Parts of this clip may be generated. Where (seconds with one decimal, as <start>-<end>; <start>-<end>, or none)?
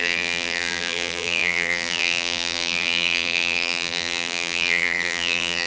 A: 0.0-5.7